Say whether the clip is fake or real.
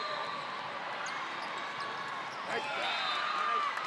real